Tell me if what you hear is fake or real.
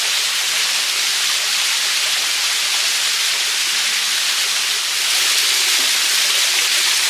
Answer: real